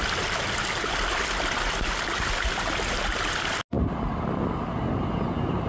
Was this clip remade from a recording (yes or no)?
no